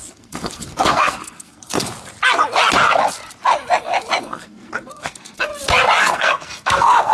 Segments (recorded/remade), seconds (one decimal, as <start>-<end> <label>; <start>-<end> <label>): 0.0-1.9 remade; 1.9-4.2 recorded; 4.2-5.5 remade; 5.5-6.0 recorded; 6.0-7.1 remade